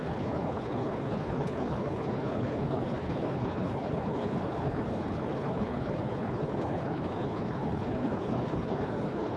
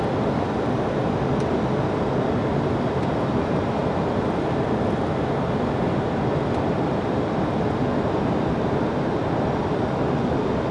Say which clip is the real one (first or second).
second